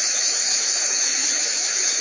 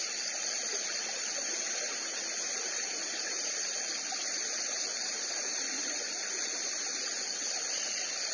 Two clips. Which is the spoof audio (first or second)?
first